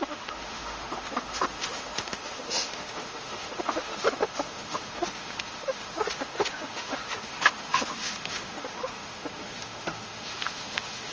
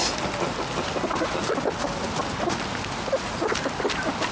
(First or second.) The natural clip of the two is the second